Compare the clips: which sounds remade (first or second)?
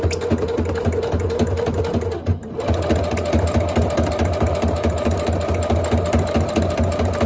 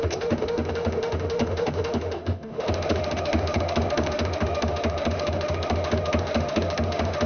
second